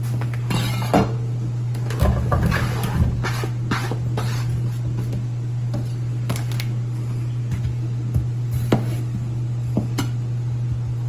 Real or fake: real